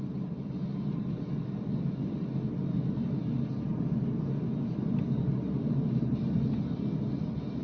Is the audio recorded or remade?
recorded